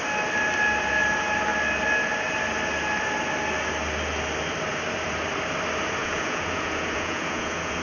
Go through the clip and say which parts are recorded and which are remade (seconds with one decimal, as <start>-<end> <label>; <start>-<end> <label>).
0.0-6.0 recorded; 6.0-7.8 remade